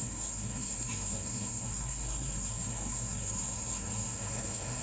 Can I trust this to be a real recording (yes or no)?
no